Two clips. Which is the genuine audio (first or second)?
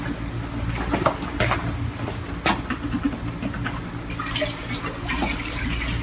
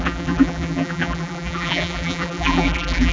first